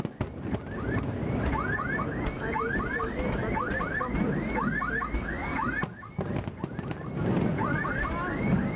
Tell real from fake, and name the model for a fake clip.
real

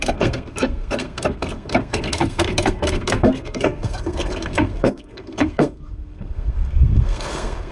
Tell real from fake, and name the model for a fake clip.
fake, codec, SNAC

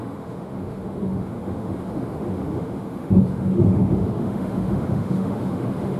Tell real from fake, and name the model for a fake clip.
fake, autoencoder, DAC-VAE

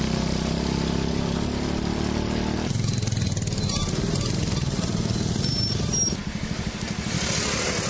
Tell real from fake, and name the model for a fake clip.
real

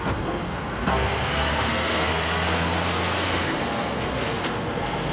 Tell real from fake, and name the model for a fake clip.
fake, codec, SNAC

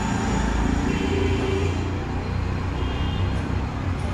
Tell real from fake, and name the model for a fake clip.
real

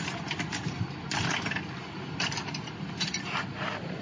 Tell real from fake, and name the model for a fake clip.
real